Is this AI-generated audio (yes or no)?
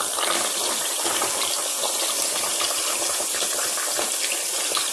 no